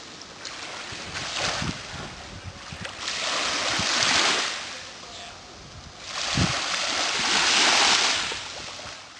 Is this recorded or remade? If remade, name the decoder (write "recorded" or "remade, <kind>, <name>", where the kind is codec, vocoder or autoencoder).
recorded